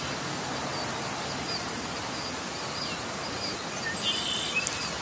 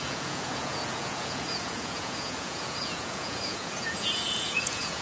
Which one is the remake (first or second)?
second